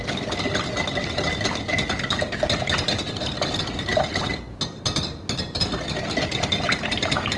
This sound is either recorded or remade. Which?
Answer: recorded